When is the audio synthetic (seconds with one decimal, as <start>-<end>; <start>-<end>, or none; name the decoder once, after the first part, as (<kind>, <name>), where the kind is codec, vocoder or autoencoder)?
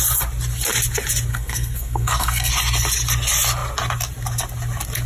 1.3-2.5 (codec, SNAC)